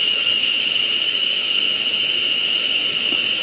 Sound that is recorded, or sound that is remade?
remade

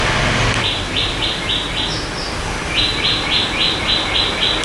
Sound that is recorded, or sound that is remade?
recorded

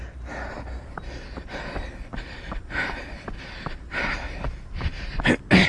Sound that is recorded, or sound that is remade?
recorded